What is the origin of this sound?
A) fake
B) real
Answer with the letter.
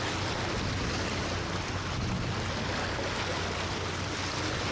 B